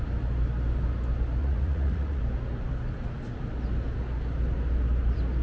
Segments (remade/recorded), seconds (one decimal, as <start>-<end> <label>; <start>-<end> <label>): 0.0-1.4 recorded; 1.4-2.2 remade; 2.2-5.4 recorded